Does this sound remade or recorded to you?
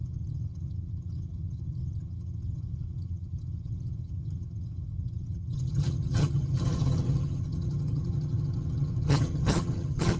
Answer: remade